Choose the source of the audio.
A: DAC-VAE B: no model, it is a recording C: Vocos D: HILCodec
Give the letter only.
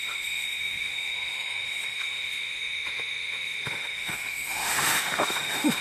A